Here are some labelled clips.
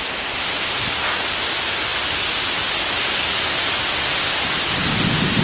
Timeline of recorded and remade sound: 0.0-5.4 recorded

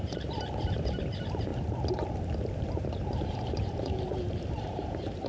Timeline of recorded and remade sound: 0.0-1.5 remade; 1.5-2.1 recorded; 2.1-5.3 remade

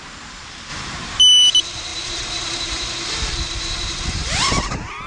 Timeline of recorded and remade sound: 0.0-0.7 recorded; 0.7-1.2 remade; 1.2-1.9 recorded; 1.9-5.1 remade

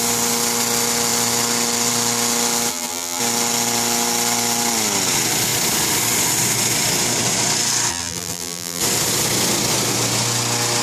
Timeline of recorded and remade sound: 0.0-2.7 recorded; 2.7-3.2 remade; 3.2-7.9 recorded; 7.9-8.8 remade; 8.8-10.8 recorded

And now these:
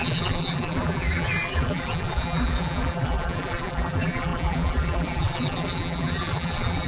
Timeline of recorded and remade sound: 0.0-6.9 remade

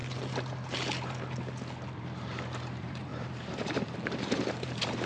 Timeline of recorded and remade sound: 0.0-1.9 recorded; 1.9-5.1 remade

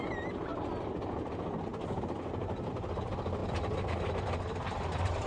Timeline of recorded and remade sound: 0.0-0.5 remade; 0.5-2.0 recorded; 2.0-5.3 remade